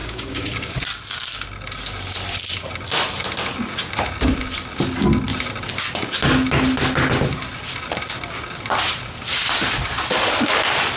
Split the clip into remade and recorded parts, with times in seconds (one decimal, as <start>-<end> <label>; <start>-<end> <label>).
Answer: 0.0-0.7 remade; 0.7-11.0 recorded